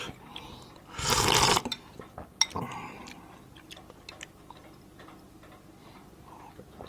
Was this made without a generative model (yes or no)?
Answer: yes